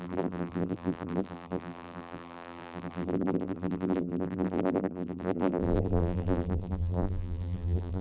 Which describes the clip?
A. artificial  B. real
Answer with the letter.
A